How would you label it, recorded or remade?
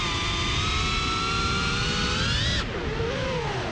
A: recorded